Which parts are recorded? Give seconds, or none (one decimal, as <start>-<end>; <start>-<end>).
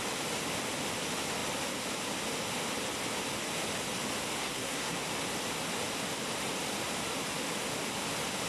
0.0-4.4; 5.1-8.5